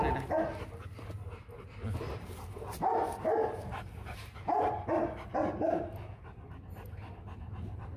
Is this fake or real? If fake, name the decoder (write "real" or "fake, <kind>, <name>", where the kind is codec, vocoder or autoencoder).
real